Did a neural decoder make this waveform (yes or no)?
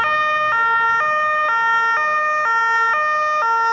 no